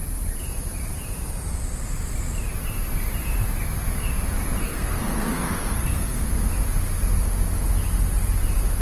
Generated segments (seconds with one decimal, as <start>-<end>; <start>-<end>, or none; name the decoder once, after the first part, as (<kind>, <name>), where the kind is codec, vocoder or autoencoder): 4.6-6.2 (codec, SNAC)